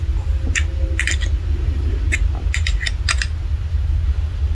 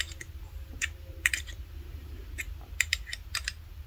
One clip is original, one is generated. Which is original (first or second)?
first